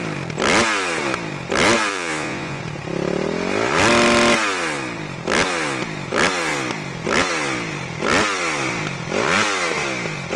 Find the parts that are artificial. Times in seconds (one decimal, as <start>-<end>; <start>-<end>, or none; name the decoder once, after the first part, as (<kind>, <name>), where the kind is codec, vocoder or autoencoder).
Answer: 1.9-2.6 (vocoder, Vocos)